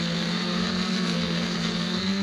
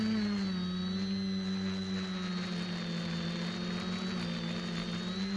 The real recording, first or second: second